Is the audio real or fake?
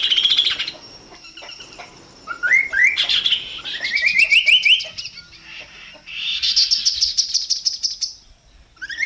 real